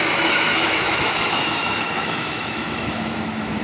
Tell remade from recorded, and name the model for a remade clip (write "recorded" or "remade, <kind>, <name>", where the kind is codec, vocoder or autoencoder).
remade, autoencoder, DAC-VAE